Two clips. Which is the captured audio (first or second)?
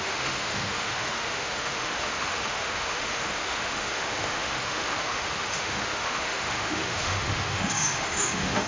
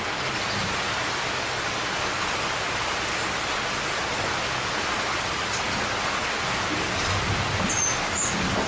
second